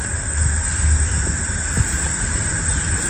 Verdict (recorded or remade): recorded